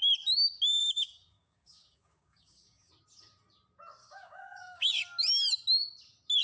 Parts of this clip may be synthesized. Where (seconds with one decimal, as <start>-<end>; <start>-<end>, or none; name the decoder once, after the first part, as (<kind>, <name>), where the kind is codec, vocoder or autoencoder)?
0.8-2.9 (codec, DAC); 4.0-4.9

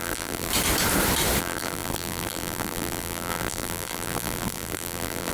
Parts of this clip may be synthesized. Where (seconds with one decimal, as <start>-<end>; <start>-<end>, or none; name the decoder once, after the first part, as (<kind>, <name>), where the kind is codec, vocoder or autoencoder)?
0.0-0.5 (vocoder, BigVGAN v2); 1.4-5.3

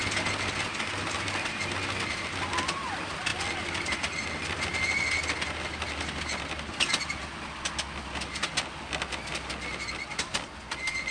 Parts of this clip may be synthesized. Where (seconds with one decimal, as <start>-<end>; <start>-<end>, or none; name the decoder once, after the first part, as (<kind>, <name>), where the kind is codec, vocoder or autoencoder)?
none

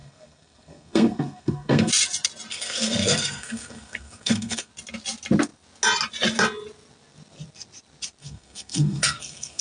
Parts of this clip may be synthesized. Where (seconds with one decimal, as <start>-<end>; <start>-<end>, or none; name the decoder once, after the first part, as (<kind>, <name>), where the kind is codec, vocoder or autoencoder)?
0.0-1.9 (codec, SNAC); 2.5-4.7; 8.2-9.6